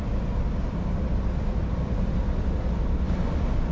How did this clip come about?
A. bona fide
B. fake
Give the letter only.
A